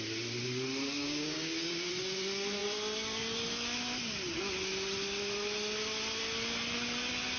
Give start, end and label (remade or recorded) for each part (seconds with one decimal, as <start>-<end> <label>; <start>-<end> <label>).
0.0-1.0 recorded; 1.0-1.9 remade; 1.9-7.4 recorded